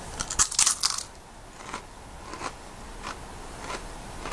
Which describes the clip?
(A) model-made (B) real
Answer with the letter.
B